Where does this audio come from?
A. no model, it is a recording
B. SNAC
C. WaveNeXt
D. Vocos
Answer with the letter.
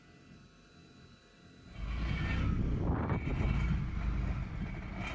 A